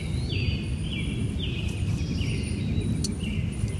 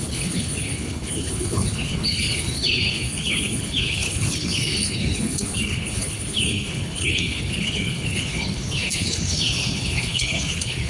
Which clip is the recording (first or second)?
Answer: first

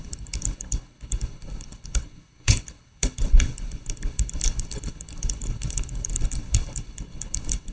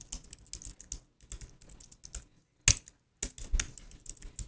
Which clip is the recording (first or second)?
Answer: second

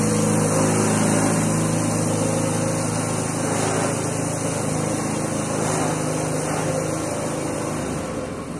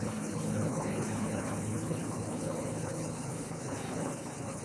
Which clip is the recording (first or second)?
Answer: first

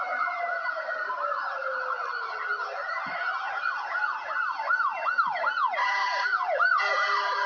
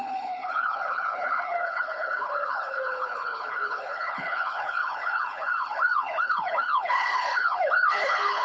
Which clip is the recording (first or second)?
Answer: first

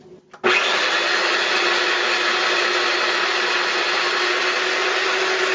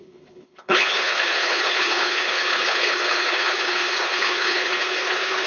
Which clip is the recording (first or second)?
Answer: first